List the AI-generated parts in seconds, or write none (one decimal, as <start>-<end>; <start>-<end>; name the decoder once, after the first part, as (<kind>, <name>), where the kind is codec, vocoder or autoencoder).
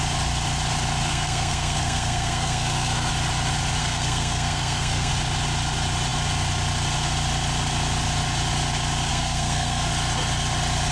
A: 1.1-3.1 (codec, SNAC); 3.8-5.1; 9.1-9.9